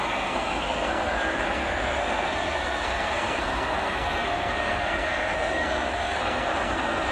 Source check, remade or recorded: remade